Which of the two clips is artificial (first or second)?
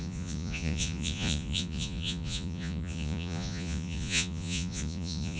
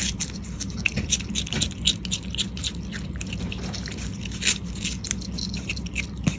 first